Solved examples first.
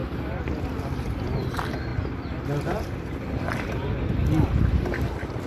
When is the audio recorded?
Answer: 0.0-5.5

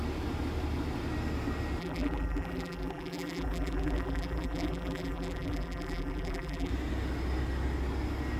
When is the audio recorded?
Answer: 0.0-1.8; 6.7-8.4

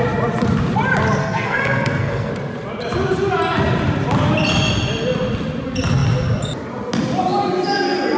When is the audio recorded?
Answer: 0.0-1.2; 2.3-8.2

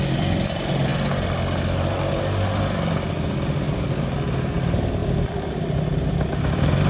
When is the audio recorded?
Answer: 0.0-5.0

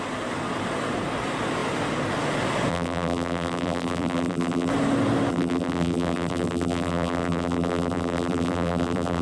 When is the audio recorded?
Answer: 0.0-2.7; 4.7-5.3

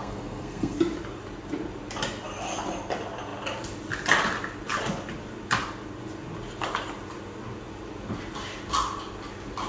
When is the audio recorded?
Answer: 0.8-9.7